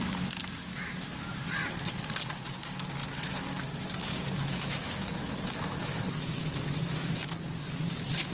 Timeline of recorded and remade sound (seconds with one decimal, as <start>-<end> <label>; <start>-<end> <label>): 0.0-0.4 recorded; 0.4-1.4 remade; 1.4-3.0 recorded; 3.0-7.3 remade; 7.3-8.3 recorded